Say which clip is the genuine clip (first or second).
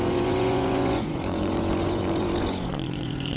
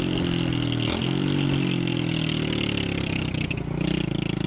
second